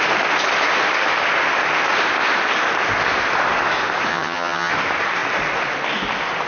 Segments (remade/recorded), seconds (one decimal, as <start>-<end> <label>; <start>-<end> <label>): 0.0-4.1 recorded; 4.1-4.7 remade; 4.7-6.5 recorded

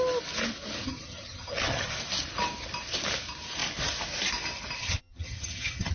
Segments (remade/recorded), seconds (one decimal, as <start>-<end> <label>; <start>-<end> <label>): 0.0-0.8 recorded; 0.8-1.9 remade; 1.9-4.8 recorded; 4.8-5.9 remade

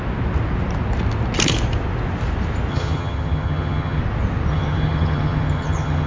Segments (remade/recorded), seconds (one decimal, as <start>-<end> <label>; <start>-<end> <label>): 0.0-2.7 recorded; 2.7-4.0 remade; 4.0-4.5 recorded; 4.5-6.1 remade

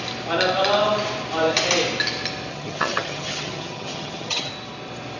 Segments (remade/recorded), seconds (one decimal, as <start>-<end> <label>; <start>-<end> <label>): 0.0-2.5 recorded; 2.5-4.5 remade; 4.5-5.2 recorded

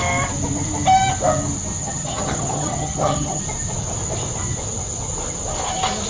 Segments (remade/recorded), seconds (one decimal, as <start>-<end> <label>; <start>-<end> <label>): 0.0-1.8 recorded; 1.8-3.4 remade; 3.4-6.1 recorded